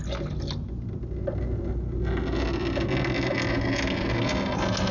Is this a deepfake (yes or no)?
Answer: no